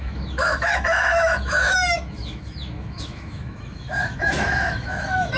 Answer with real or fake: fake